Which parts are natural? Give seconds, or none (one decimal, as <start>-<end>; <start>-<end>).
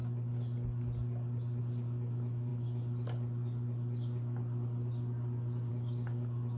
0.0-6.6